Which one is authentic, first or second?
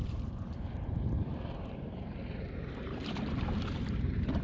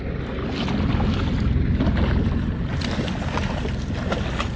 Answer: second